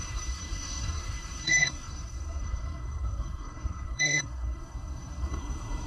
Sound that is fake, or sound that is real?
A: fake